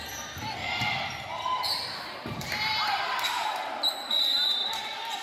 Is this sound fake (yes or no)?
yes